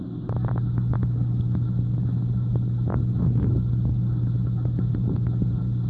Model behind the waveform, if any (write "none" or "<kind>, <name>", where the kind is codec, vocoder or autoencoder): none